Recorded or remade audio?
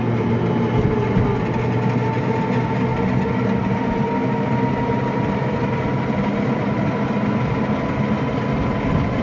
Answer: recorded